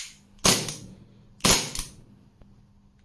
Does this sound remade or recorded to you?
recorded